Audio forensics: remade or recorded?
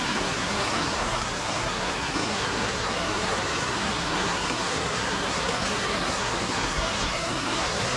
remade